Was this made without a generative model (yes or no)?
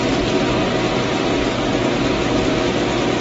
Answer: yes